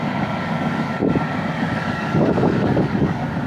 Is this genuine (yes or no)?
no